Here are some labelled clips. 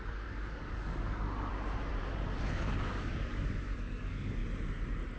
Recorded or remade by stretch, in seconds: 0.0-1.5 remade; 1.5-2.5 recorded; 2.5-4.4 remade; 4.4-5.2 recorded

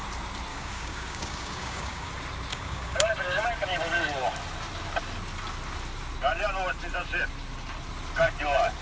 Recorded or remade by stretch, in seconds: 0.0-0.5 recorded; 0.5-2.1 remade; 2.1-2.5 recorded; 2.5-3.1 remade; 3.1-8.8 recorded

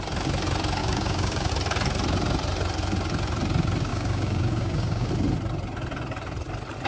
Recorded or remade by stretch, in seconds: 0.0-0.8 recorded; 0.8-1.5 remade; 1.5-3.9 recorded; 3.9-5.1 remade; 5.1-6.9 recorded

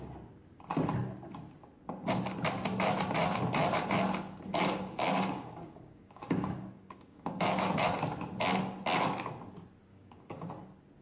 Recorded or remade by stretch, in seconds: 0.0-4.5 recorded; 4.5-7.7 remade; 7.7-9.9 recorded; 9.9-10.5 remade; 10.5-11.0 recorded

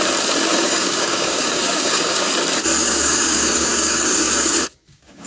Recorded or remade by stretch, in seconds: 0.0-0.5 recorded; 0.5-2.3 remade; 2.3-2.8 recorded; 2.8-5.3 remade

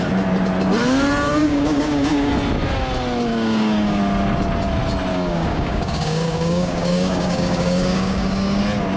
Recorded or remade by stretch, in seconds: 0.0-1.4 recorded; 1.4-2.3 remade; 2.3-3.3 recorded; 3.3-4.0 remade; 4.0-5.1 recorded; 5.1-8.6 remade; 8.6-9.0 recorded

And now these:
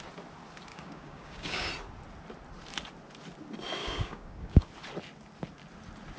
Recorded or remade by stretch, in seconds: 0.0-0.7 recorded; 0.7-1.7 remade; 1.7-3.8 recorded; 3.8-4.7 remade; 4.7-6.2 recorded

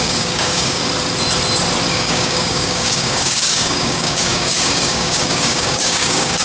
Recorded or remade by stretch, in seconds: 0.0-0.8 remade; 0.8-1.9 recorded; 1.9-6.4 remade